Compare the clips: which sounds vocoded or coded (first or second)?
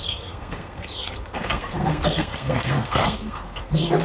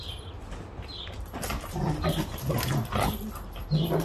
first